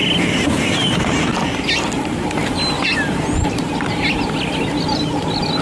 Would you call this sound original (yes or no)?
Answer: yes